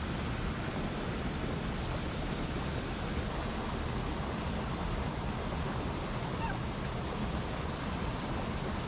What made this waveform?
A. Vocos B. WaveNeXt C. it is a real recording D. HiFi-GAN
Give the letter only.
C